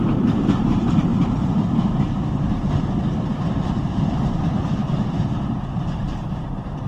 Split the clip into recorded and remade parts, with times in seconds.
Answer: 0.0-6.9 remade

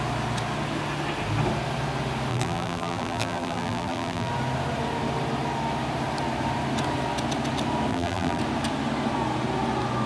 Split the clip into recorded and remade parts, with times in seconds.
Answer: 0.0-2.3 recorded; 2.3-4.3 remade; 4.3-7.9 recorded; 7.9-8.4 remade; 8.4-10.1 recorded

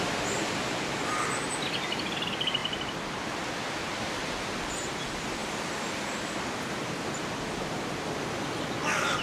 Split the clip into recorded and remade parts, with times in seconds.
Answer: 0.0-2.6 recorded; 2.6-3.3 remade; 3.3-9.2 recorded

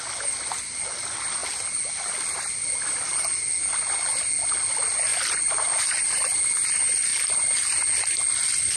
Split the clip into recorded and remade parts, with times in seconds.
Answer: 0.0-5.1 recorded; 5.1-5.8 remade; 5.8-8.8 recorded

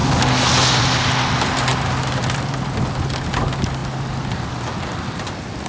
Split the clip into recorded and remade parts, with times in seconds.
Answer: 0.0-1.7 recorded; 1.7-3.3 remade; 3.3-5.7 recorded